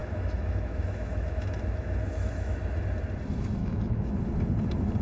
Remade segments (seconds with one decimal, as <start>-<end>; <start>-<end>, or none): 0.0-2.6; 3.6-4.1